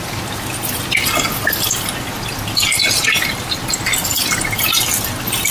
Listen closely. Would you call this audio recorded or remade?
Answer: recorded